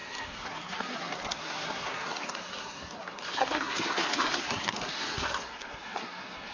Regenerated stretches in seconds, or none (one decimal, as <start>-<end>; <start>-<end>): 0.0-6.5